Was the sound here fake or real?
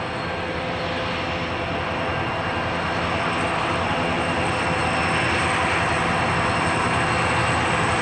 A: real